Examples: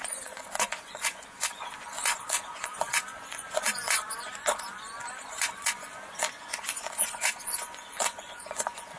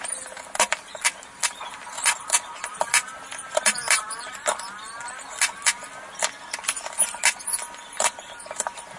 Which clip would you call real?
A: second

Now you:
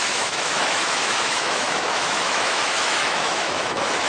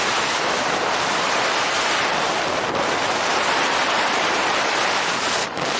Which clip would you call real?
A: second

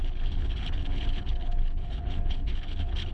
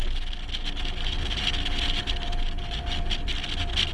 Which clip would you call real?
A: second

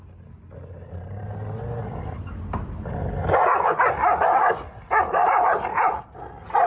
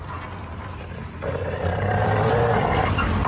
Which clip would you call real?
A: first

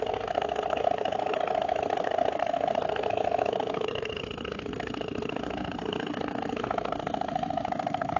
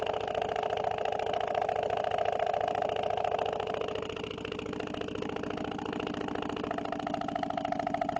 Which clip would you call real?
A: second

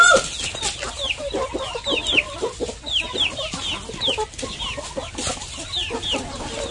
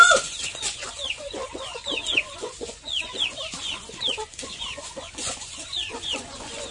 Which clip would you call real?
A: first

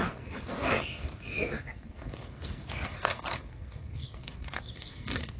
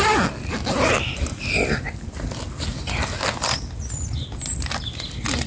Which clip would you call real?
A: second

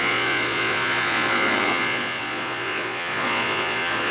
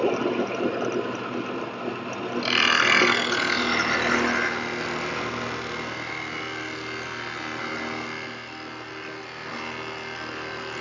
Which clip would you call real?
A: second